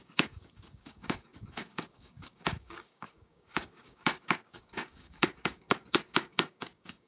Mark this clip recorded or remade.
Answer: remade